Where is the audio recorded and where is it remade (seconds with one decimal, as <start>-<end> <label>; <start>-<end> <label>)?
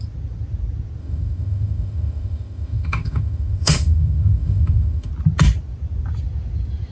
0.0-1.0 recorded; 1.0-5.1 remade; 5.1-6.9 recorded